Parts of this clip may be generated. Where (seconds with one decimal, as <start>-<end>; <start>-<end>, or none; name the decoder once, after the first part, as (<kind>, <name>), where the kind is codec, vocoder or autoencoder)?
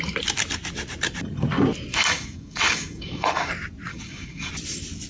1.9-3.5 (codec, DAC); 3.9-4.5